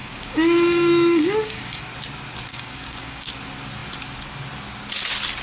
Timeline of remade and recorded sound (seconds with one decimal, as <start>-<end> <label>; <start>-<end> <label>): 0.0-1.8 remade; 1.8-2.5 recorded; 2.5-3.3 remade; 3.3-5.4 recorded